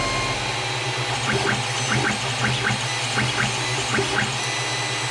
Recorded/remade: recorded